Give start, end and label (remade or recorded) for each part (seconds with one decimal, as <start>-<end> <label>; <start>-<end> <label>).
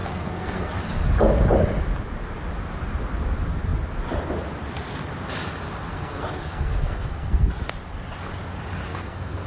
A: 0.0-0.7 remade; 0.7-5.9 recorded; 5.9-7.5 remade; 7.5-8.9 recorded; 8.9-9.5 remade